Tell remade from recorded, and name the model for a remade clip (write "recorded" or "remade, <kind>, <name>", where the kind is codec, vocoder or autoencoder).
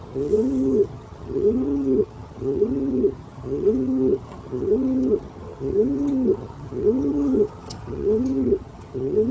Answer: remade, vocoder, HiFi-GAN